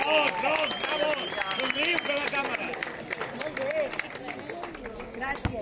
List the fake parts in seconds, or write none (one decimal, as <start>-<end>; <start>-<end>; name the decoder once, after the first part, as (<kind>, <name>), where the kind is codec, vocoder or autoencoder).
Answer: none